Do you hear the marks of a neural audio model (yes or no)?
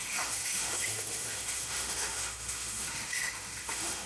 yes